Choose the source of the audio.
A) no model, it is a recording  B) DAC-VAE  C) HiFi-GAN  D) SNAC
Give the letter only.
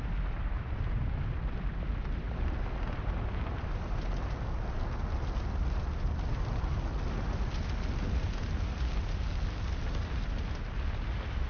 A